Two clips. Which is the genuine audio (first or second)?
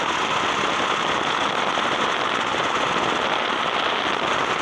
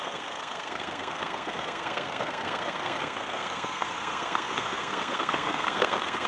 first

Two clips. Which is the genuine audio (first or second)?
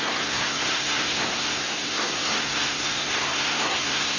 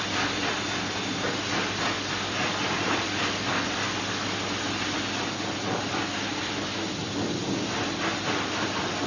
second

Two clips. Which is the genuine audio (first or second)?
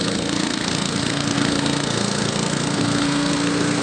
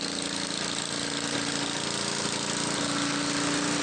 second